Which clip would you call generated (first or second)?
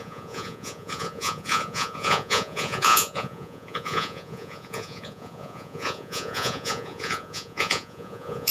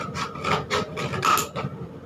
first